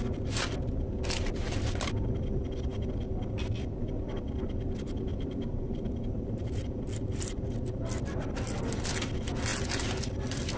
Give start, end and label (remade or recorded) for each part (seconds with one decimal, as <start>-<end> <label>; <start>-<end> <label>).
0.0-5.1 recorded; 5.1-6.6 remade; 6.6-10.6 recorded